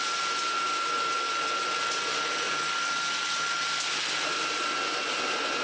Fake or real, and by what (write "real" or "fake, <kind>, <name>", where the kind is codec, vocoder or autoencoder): real